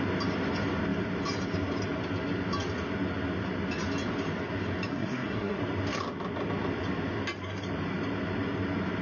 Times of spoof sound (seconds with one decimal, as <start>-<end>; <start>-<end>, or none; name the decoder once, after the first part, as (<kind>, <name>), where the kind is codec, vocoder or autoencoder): 4.9-5.6 (codec, SNAC)